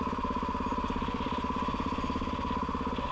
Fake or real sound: fake